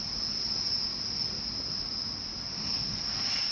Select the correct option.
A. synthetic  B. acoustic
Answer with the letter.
B